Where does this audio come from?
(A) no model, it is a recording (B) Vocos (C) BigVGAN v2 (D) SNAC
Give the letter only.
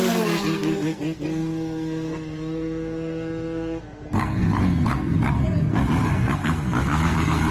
D